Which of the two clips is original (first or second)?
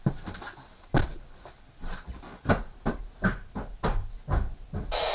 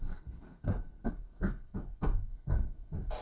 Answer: first